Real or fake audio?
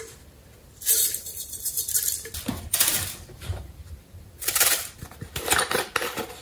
fake